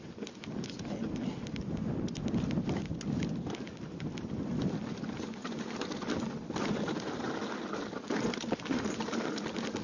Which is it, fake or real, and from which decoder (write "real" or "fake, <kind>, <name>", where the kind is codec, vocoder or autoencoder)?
real